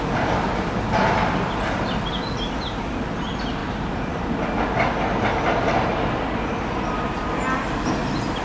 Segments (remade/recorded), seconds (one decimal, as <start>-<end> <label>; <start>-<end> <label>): 0.0-3.6 recorded; 3.6-4.1 remade; 4.1-8.4 recorded